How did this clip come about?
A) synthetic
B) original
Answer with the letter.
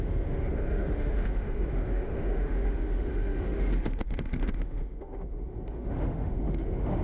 A